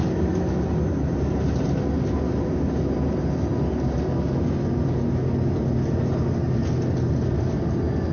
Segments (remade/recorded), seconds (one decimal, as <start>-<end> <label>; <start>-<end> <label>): 0.0-8.1 recorded